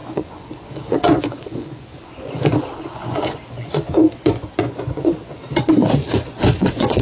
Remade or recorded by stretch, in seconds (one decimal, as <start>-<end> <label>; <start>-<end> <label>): 0.0-7.0 remade